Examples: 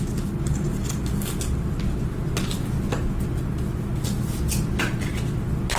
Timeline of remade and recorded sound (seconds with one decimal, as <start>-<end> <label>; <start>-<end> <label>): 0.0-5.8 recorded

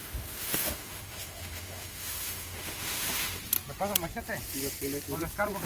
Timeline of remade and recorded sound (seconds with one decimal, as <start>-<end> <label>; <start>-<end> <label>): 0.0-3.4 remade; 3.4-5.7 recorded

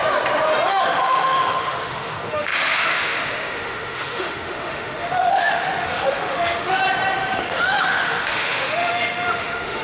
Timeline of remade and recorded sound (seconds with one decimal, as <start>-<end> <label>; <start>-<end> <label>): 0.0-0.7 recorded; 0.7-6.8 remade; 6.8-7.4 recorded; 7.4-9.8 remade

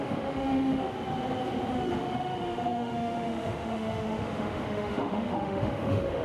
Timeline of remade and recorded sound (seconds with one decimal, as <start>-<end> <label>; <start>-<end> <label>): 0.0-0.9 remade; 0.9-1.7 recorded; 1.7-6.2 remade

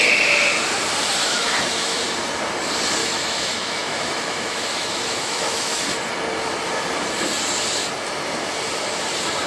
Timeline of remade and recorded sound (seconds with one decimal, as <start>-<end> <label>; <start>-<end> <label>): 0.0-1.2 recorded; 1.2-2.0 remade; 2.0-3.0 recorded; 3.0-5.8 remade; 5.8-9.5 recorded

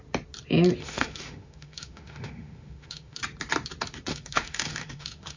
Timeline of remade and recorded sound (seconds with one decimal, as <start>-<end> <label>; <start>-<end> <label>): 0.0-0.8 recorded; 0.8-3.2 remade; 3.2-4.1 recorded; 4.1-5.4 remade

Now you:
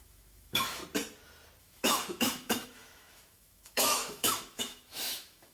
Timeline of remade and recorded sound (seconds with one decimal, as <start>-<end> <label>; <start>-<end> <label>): 0.0-0.8 remade; 0.8-1.6 recorded; 1.6-5.5 remade

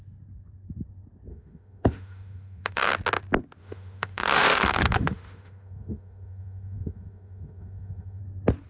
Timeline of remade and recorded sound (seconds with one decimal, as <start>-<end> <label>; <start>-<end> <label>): 0.0-1.3 recorded; 1.3-2.9 remade; 2.9-3.6 recorded; 3.6-8.2 remade; 8.2-8.7 recorded